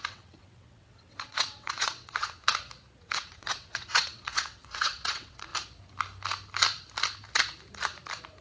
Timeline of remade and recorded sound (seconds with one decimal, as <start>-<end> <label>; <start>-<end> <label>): 0.0-2.4 remade; 2.4-3.0 recorded; 3.0-5.5 remade; 5.5-8.4 recorded